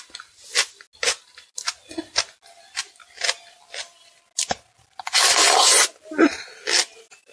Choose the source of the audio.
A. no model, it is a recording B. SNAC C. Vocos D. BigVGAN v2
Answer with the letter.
A